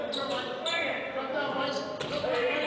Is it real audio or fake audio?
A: real